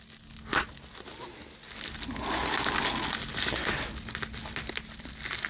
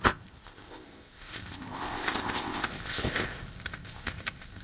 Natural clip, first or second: first